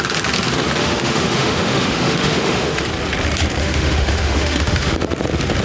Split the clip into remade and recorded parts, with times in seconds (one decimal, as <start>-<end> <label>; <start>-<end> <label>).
0.0-0.8 recorded; 0.8-2.8 remade; 2.8-3.6 recorded; 3.6-5.0 remade; 5.0-5.6 recorded